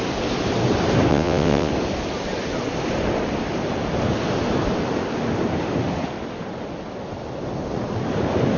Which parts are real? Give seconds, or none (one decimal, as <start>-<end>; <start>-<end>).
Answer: 0.0-1.1; 1.7-8.6